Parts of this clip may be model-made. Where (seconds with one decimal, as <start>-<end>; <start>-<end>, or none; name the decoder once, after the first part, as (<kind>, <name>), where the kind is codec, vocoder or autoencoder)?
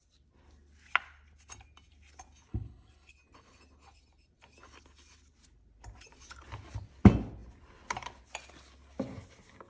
2.5-3.1 (codec, HILCodec)